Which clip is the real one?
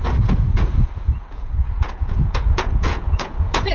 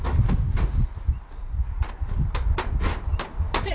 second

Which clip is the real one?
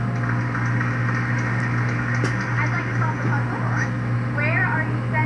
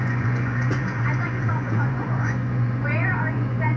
first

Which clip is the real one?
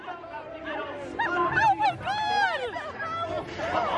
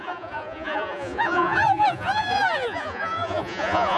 first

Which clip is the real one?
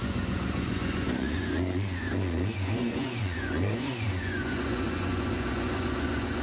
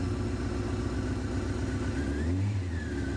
second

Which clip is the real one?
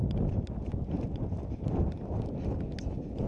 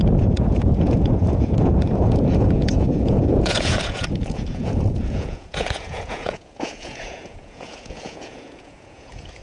first